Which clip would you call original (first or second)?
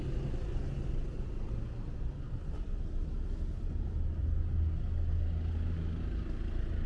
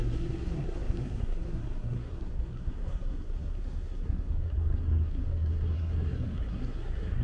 first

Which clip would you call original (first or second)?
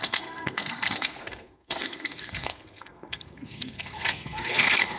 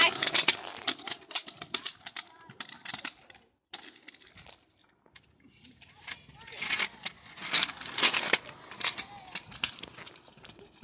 second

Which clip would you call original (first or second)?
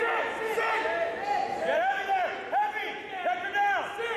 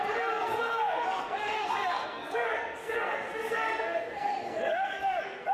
first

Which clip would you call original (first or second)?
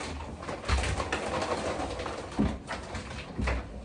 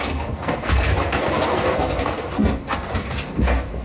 first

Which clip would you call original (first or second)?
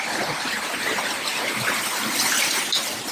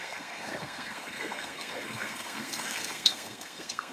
first